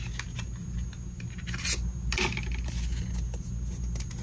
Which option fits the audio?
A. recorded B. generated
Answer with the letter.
A